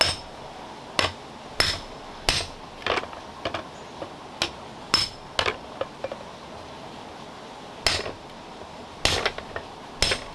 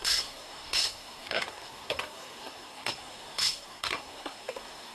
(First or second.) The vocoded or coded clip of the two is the second